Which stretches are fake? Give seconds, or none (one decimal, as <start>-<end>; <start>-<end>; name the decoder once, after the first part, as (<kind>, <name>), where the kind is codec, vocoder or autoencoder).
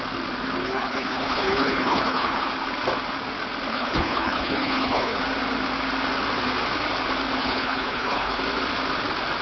0.6-2.5 (codec, HILCodec); 3.7-5.2; 7.4-8.4